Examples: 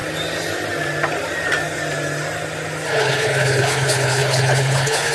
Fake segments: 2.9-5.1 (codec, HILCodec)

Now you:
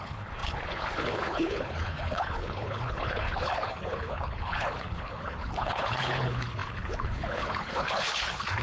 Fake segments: 0.0-8.6 (codec, HILCodec)

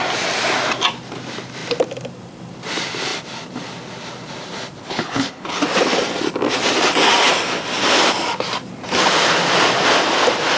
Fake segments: 4.8-5.6 (codec, HILCodec)

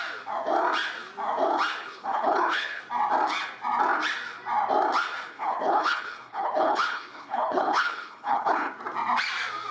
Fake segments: 1.8-2.8 (codec, HILCodec); 5.3-8.7

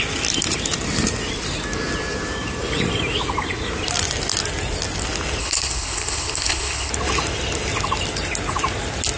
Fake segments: 5.4-6.9 (codec, HILCodec)

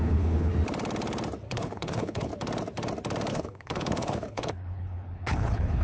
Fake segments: 0.0-0.5 (codec, HILCodec); 1.5-2.3; 3.3-5.8

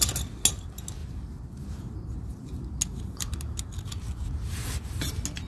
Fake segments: none